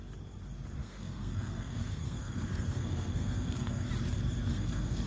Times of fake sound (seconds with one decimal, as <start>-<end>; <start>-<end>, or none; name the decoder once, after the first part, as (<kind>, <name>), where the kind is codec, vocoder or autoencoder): 0.8-3.9 (codec, SNAC); 4.5-5.1